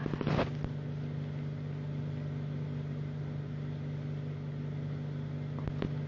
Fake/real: real